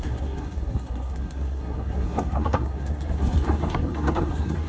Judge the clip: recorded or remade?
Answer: remade